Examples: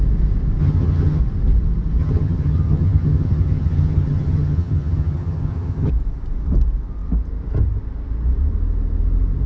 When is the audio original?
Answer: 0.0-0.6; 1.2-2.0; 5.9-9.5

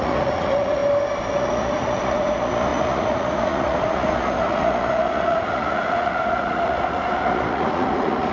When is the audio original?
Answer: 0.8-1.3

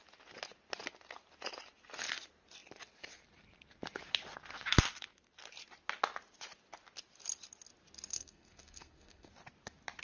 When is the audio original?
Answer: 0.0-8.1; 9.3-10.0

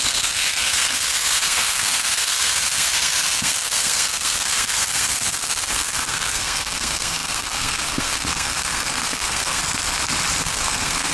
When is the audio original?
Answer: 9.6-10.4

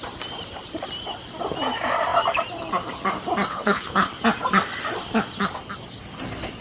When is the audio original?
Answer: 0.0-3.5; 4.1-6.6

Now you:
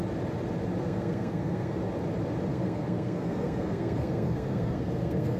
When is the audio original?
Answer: 0.0-0.8; 1.7-2.5